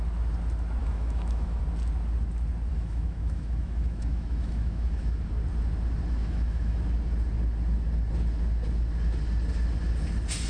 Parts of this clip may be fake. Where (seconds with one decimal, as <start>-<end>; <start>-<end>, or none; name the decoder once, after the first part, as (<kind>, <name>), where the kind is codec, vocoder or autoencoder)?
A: 0.8-1.6 (autoencoder, DAC-VAE); 2.7-5.3; 6.2-6.8